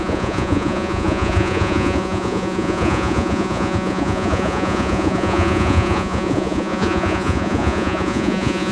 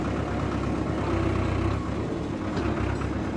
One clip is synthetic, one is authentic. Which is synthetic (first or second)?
first